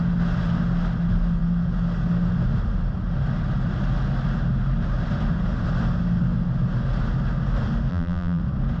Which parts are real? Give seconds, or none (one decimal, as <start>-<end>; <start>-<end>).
0.0-7.9; 8.4-8.8